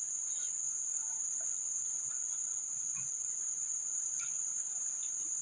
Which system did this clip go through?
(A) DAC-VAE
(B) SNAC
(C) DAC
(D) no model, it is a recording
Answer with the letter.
D